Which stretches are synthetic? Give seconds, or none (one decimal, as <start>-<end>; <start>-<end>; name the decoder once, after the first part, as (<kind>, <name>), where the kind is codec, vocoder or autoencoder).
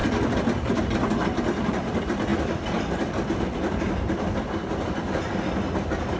0.0-2.3 (vocoder, BigVGAN v2)